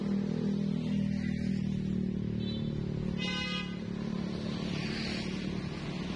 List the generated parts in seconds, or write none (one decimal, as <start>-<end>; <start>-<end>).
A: none